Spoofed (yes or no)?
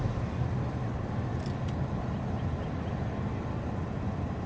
no